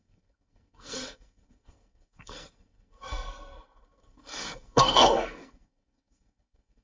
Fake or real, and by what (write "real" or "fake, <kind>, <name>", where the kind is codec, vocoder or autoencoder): fake, codec, SNAC